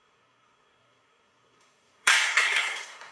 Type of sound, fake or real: fake